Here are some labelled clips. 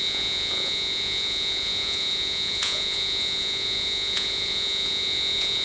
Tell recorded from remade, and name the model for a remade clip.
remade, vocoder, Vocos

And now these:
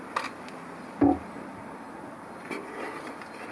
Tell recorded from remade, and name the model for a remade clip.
recorded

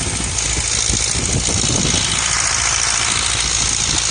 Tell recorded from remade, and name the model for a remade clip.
recorded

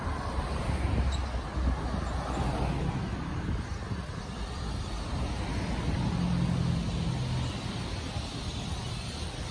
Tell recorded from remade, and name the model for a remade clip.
recorded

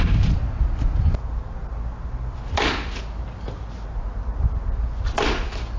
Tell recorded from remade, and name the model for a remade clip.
recorded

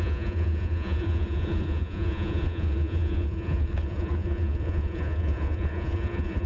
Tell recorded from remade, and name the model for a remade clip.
remade, vocoder, Vocos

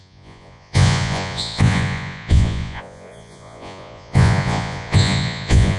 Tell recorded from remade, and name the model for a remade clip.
remade, vocoder, Vocos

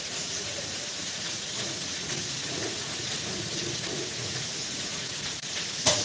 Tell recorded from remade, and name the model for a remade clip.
remade, vocoder, Vocos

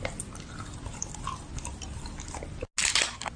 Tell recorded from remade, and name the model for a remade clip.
recorded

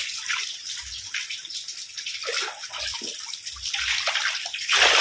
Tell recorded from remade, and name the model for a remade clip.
recorded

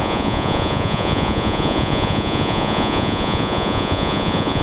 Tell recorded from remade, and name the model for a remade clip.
remade, vocoder, Vocos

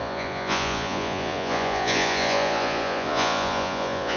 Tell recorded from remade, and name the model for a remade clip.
remade, vocoder, Vocos